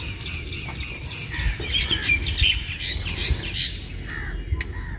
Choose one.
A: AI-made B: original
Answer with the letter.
B